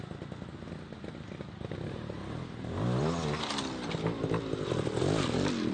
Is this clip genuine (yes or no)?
yes